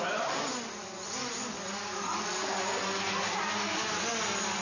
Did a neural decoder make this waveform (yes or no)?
no